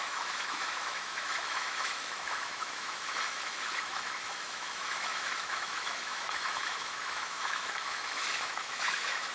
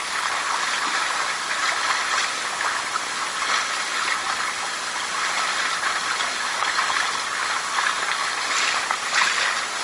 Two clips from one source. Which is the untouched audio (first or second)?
second